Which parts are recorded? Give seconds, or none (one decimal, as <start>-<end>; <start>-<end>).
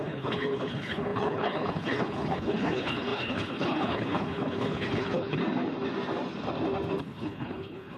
5.4-7.0